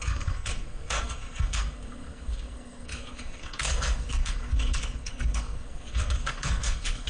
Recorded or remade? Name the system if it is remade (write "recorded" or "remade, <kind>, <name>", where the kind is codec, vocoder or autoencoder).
remade, codec, SNAC